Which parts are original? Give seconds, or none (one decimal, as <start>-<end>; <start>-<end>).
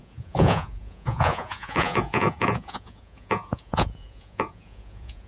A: none